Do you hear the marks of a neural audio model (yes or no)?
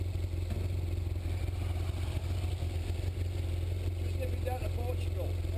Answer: no